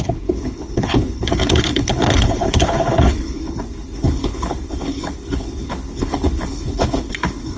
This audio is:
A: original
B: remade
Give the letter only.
B